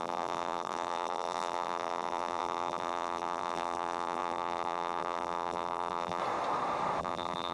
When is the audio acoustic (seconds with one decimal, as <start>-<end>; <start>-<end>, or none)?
6.2-7.0